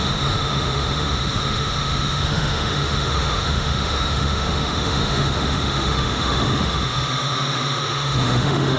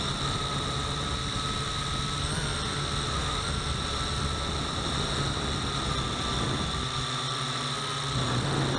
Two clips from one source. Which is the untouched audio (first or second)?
second